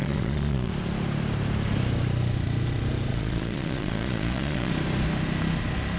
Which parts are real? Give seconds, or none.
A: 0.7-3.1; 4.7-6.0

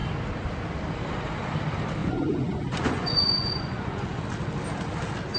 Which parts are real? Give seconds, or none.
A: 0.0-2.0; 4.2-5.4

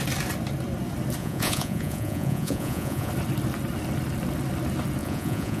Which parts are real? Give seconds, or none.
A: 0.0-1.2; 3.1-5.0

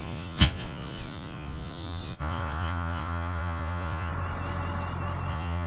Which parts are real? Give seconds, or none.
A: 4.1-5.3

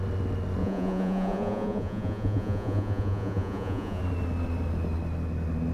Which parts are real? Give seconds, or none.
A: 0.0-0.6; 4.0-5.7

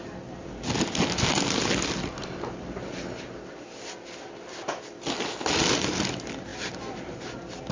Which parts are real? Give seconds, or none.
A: 0.0-7.7

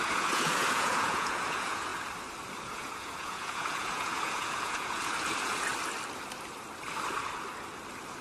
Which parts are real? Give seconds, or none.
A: 1.9-2.6; 5.7-8.2

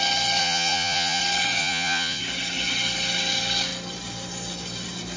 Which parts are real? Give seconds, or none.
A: 0.0-0.4; 1.2-1.6; 2.2-5.2